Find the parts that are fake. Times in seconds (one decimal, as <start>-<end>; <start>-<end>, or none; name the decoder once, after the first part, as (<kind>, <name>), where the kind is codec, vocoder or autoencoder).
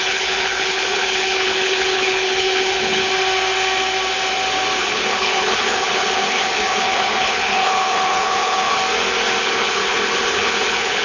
0.0-3.1 (codec, HILCodec); 4.8-8.8; 9.4-11.0